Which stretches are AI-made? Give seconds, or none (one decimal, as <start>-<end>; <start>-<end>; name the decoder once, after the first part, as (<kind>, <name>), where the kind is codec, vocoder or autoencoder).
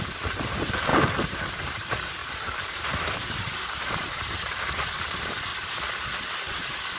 0.0-2.2 (vocoder, BigVGAN v2); 2.8-5.5; 6.4-7.0